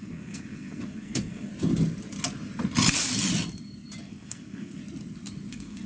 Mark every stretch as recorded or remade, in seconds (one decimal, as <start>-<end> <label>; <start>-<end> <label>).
0.0-1.5 remade; 1.5-4.0 recorded; 4.0-4.8 remade; 4.8-5.5 recorded; 5.5-5.9 remade